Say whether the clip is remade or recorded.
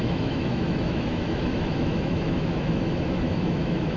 remade